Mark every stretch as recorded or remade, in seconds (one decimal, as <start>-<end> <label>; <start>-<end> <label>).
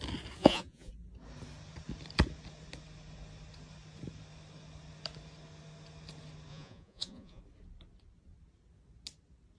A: 0.0-0.4 recorded; 0.4-0.9 remade; 0.9-6.5 recorded; 6.5-7.4 remade; 7.4-9.6 recorded